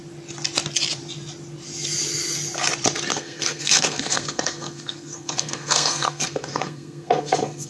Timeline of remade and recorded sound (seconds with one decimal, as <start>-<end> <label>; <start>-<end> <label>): 0.0-3.1 recorded; 3.1-7.7 remade